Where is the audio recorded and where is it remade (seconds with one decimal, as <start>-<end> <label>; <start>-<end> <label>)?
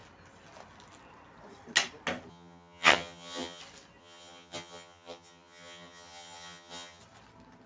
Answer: 0.0-2.3 recorded; 2.3-3.6 remade; 3.6-4.0 recorded; 4.0-7.0 remade; 7.0-7.7 recorded